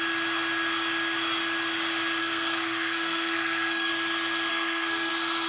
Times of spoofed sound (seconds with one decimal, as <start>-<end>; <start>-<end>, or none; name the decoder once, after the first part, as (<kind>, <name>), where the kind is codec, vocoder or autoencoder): 2.2-3.9 (codec, SNAC); 4.5-5.1